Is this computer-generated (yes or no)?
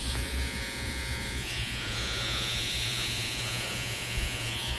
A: yes